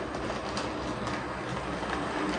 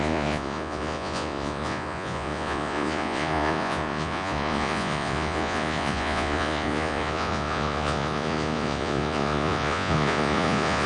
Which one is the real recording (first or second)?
first